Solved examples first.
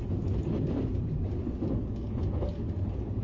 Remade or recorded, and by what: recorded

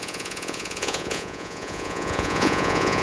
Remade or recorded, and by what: remade, vocoder, Vocos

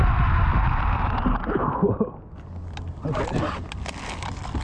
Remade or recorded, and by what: recorded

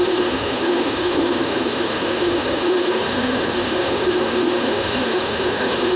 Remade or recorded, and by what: remade, autoencoder, DAC-VAE